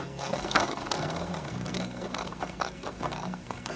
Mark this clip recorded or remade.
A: remade